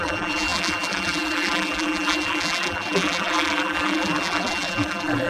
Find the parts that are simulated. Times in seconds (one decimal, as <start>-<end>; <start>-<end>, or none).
0.0-5.3